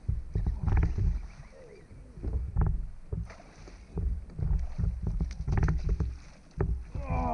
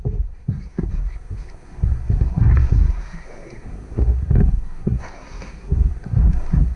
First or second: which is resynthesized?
second